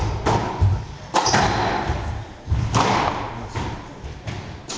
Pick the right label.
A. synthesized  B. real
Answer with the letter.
B